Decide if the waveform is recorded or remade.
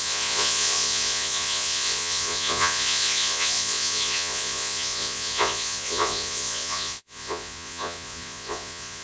remade